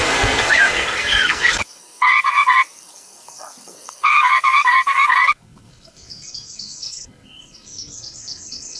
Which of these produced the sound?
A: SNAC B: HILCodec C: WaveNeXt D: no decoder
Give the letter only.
A